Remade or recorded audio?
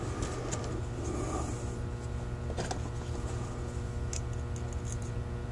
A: recorded